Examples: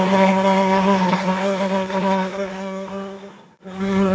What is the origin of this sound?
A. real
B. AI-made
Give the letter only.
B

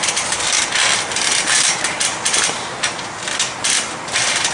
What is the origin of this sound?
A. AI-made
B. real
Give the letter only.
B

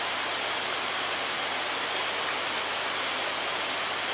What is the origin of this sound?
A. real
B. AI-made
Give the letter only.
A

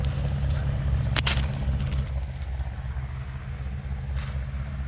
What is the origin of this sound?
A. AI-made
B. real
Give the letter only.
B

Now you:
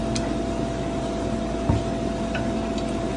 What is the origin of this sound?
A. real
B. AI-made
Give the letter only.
A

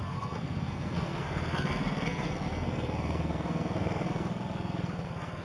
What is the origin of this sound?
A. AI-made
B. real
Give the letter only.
A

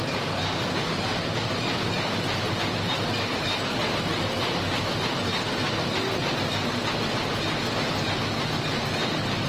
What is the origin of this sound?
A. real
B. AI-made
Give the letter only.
A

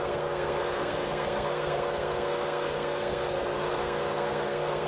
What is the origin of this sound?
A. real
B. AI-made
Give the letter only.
B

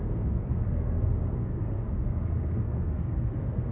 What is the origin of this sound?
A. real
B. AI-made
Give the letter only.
B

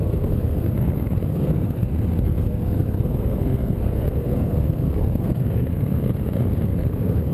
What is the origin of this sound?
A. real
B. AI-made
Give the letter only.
B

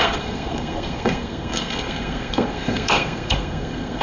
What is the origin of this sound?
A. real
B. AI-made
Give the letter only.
B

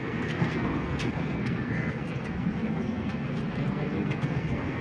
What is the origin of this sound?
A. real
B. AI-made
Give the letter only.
B